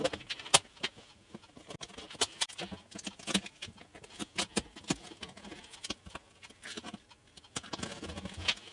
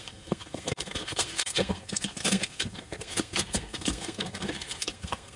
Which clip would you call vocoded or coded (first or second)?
second